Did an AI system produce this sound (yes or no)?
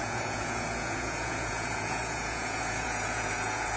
yes